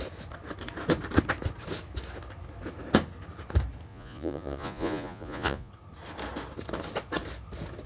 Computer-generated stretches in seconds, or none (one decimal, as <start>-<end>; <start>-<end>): 3.9-5.7